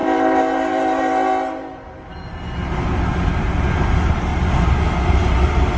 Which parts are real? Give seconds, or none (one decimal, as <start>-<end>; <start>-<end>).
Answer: 0.0-5.8